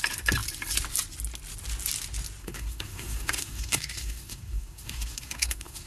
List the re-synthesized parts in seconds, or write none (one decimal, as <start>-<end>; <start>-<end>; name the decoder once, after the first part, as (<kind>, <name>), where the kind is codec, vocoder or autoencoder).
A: 2.4-5.9 (codec, SNAC)